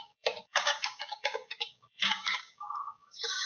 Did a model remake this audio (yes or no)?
yes